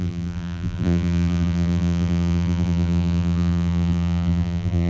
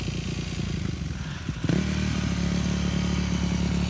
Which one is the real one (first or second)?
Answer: second